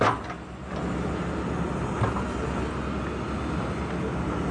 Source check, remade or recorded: recorded